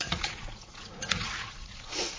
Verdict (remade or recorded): remade